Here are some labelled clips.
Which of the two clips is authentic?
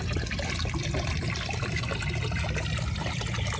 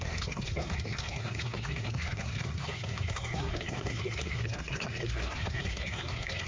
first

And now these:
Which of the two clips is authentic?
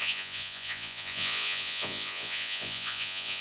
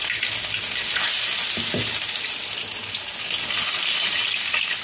second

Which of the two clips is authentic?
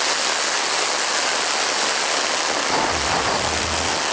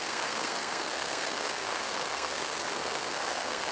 first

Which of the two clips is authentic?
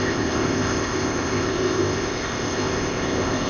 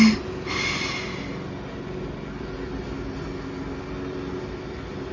second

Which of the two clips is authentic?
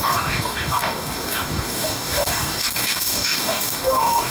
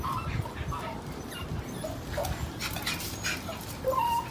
second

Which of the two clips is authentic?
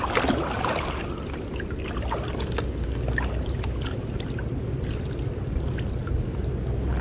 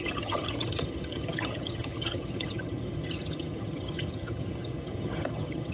first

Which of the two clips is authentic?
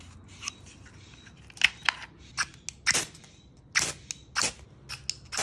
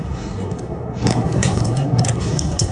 first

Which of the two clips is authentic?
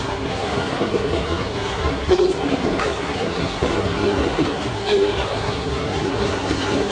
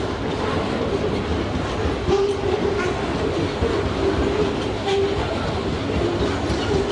second